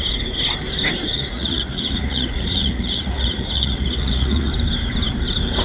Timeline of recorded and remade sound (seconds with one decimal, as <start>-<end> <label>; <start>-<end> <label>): 0.0-1.1 recorded; 1.1-4.5 remade; 4.5-5.6 recorded